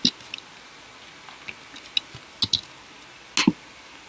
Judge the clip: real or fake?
real